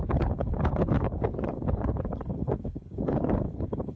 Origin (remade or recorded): remade